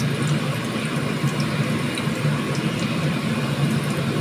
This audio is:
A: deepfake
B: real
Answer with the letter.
B